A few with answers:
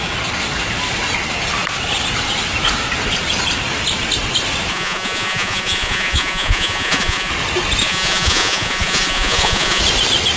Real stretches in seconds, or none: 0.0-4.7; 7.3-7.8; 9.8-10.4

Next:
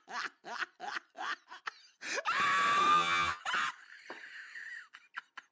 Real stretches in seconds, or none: 0.0-2.9; 3.4-5.5

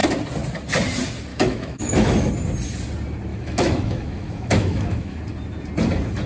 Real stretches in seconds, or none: 0.0-1.3; 2.3-3.3; 5.2-6.3